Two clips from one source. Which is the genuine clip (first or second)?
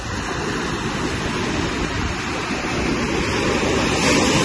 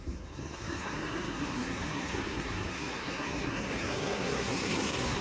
first